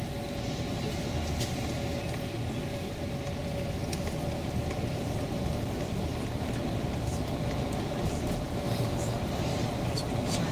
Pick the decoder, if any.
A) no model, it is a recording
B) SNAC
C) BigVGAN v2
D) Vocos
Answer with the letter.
A